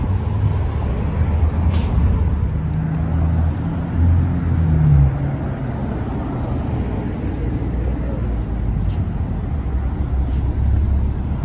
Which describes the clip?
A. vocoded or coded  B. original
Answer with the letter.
B